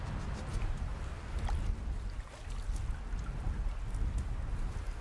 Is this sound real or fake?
real